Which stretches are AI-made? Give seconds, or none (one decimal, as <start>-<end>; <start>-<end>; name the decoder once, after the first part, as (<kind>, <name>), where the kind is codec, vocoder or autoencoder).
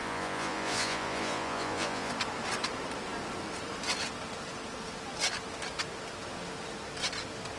0.0-2.1 (vocoder, Vocos)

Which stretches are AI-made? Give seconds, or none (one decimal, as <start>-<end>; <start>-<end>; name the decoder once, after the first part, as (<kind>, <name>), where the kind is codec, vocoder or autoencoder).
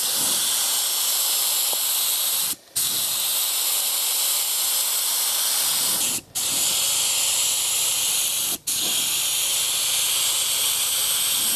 none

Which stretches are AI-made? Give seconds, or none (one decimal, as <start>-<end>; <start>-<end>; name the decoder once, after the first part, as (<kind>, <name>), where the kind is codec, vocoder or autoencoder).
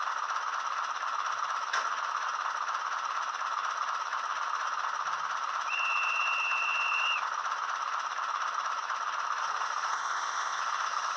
9.9-10.6 (codec, ZipCodec)